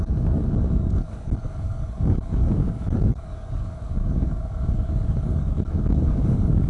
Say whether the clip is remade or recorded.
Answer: remade